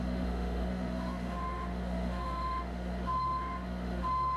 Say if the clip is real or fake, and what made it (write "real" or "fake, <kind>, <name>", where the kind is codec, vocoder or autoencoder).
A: fake, autoencoder, DAC-VAE